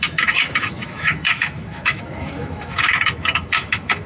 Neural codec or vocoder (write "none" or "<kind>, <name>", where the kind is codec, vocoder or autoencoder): autoencoder, DAC-VAE